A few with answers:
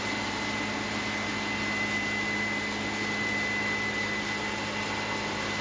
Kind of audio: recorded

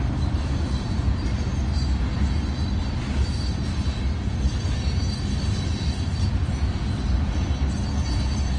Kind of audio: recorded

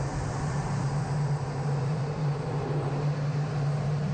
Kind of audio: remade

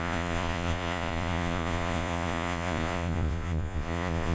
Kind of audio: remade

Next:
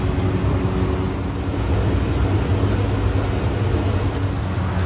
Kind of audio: recorded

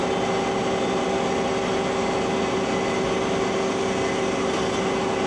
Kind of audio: recorded